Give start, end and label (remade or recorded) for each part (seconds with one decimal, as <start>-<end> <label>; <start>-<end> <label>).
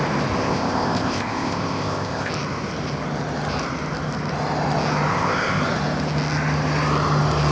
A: 0.0-0.4 recorded; 0.4-2.3 remade; 2.3-5.1 recorded; 5.1-5.6 remade; 5.6-7.5 recorded